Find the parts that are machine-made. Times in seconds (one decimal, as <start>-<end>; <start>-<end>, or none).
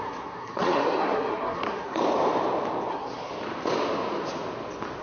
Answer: 0.0-2.0; 2.9-3.3